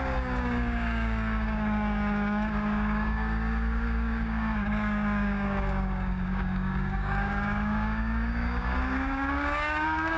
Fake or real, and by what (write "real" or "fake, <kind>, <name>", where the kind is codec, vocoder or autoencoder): fake, codec, DAC